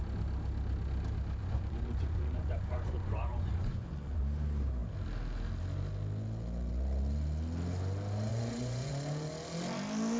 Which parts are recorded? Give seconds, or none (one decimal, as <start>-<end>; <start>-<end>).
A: 0.0-1.4; 4.2-8.3; 8.9-10.2